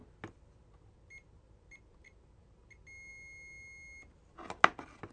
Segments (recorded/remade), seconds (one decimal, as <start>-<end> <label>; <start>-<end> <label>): 0.0-5.1 recorded